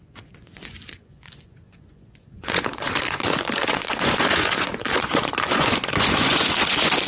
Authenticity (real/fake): fake